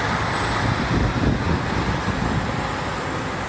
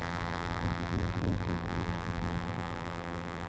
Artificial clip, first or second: second